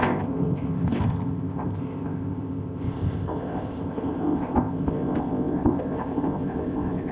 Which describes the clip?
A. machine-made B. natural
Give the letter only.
A